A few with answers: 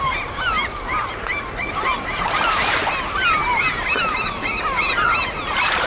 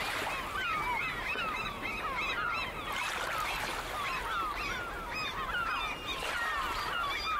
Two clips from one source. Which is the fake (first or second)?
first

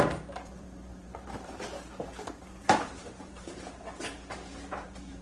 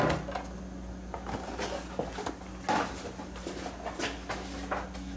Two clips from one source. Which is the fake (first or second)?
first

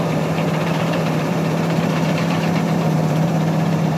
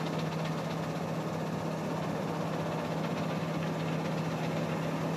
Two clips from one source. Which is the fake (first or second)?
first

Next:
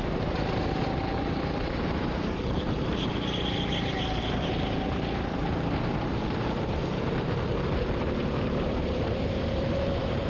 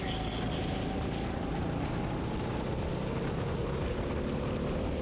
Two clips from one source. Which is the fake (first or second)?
first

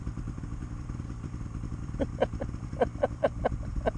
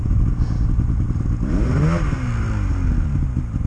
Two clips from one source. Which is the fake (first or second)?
first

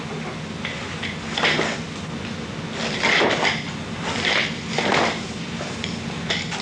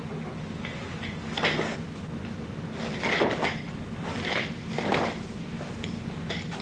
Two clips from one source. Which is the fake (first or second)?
first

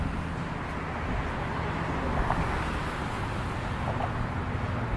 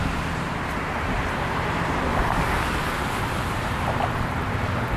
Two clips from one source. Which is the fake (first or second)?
second